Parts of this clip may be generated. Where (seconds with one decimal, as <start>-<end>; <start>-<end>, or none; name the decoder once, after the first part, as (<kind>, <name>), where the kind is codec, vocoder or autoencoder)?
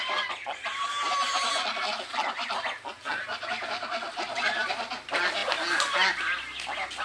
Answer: none